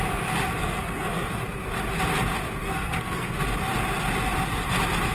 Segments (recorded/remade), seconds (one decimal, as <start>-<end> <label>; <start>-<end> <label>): 0.0-0.6 recorded; 0.6-1.4 remade; 1.4-2.6 recorded; 2.6-3.3 remade; 3.3-5.1 recorded